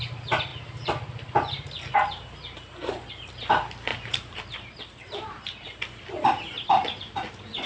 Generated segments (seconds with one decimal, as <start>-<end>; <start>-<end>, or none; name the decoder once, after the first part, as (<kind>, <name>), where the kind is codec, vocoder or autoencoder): 3.9-5.8 (vocoder, BigVGAN v2)